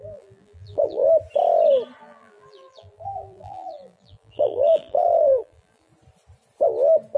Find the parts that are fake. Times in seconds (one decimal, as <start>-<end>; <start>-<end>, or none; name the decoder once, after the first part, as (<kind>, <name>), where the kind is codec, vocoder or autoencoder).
0.0-1.0 (vocoder, BigVGAN v2); 2.0-5.9